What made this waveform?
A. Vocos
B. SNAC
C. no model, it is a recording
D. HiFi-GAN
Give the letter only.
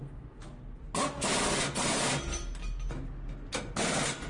C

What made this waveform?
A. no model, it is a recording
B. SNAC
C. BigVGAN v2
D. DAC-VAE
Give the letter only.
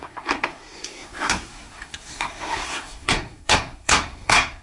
B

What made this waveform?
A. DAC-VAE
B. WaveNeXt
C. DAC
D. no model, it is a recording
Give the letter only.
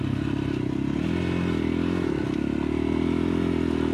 D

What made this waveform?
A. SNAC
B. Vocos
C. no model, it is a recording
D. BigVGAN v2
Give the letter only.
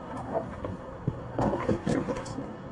A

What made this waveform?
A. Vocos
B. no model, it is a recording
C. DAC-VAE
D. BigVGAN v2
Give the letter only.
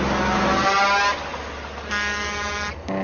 B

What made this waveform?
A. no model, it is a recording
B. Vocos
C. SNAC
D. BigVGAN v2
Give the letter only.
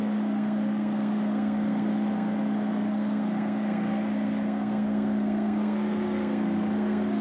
C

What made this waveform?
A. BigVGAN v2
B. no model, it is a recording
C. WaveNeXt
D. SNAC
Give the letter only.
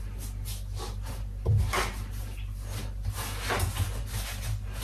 B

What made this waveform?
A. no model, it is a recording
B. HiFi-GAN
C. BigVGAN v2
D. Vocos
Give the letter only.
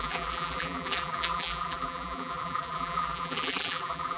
C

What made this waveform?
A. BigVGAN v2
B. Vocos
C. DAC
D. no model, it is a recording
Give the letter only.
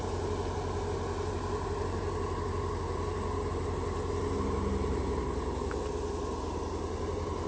D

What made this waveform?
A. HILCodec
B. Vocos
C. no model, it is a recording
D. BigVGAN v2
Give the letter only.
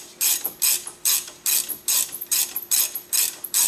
D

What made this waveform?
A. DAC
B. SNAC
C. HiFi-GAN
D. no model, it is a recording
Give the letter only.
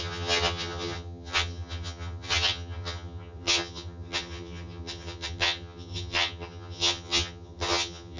C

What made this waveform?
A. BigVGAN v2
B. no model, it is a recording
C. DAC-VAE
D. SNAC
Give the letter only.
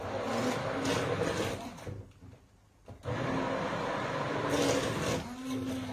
B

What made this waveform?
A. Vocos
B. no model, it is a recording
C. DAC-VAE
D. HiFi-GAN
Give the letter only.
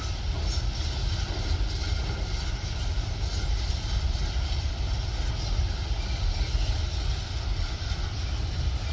B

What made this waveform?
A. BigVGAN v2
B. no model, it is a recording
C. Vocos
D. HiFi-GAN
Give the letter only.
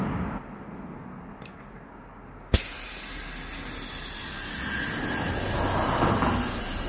B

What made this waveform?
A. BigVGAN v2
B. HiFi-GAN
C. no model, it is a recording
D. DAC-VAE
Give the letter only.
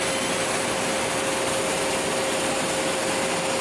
C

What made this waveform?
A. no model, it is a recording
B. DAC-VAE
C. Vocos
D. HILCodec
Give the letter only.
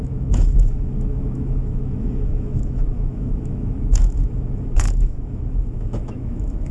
B